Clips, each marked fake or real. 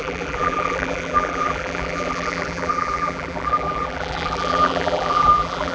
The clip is fake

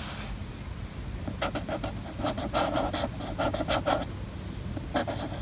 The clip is real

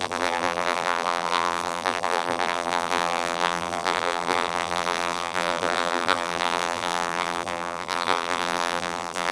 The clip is fake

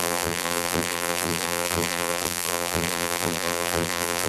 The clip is fake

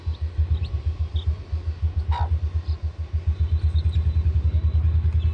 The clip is real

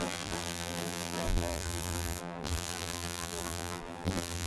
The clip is fake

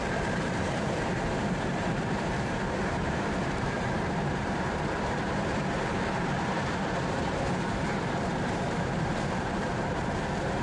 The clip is fake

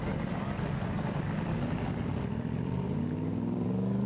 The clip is fake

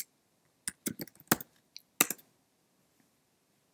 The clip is real